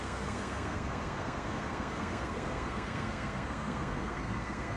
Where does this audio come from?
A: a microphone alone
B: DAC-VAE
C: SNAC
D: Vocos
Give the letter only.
C